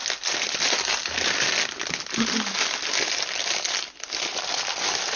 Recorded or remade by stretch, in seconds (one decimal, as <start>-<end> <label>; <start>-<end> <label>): 0.0-5.2 recorded